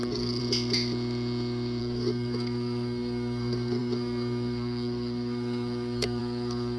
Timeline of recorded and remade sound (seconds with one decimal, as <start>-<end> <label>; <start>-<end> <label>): 0.0-0.4 remade; 0.4-1.8 recorded; 1.8-6.8 remade